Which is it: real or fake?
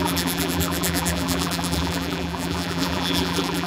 fake